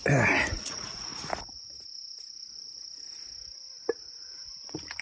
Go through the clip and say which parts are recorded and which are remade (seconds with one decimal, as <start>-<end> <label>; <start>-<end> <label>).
0.0-0.5 recorded; 0.5-1.1 remade; 1.1-4.1 recorded; 4.1-5.0 remade